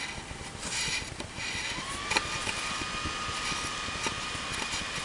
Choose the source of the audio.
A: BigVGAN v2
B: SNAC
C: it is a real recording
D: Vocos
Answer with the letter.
C